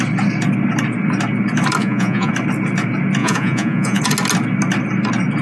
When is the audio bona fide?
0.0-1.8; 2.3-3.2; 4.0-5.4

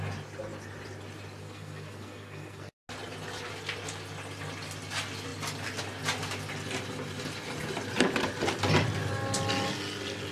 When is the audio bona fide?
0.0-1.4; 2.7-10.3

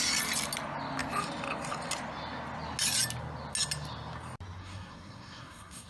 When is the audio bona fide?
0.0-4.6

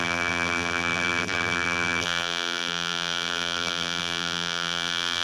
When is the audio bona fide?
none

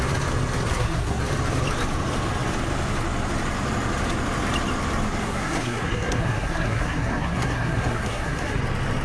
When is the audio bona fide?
0.0-0.7; 1.2-5.2; 8.6-9.0

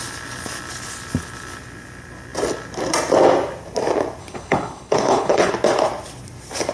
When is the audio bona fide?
0.0-4.2; 5.5-6.7